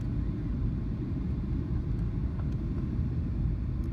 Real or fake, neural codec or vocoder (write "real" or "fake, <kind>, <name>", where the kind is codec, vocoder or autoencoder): real